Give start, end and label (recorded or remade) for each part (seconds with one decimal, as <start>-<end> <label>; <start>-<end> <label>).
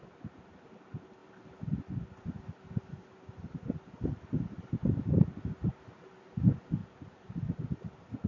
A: 0.0-6.8 recorded; 6.8-7.8 remade; 7.8-8.3 recorded